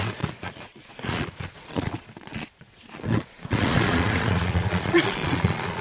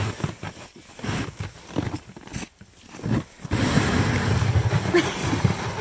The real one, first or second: second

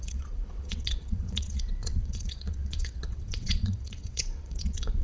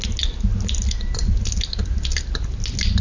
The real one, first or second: second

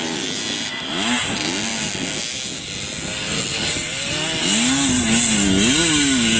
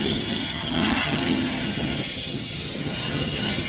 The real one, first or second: first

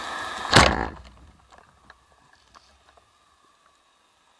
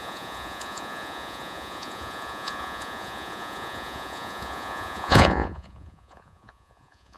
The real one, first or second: first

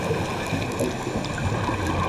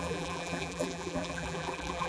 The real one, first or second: first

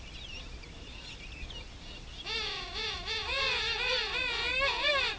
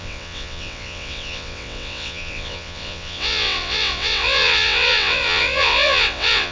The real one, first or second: first